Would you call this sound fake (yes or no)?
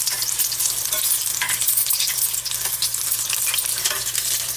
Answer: no